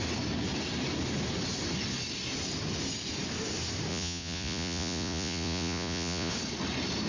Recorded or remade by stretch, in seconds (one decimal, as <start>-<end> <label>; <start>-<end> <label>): 0.0-3.9 recorded; 3.9-6.3 remade; 6.3-7.1 recorded

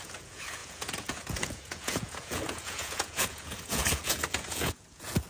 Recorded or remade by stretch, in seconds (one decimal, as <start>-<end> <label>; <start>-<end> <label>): 0.0-5.3 remade